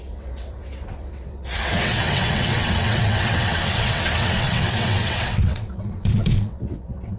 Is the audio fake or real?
fake